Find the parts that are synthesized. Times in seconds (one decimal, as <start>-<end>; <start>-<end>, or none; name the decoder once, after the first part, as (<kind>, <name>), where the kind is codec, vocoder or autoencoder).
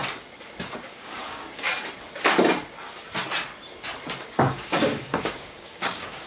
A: 0.9-1.7 (codec, DAC); 4.2-6.3